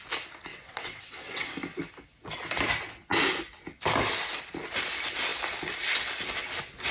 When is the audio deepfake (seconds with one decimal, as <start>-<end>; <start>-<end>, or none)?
0.5-1.5